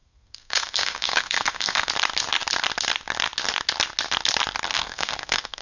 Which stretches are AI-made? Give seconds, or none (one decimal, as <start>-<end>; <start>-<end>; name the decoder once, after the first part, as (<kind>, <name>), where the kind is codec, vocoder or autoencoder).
0.0-1.9 (codec, SNAC); 4.7-5.6